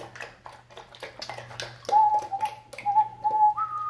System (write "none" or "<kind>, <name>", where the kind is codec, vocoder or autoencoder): none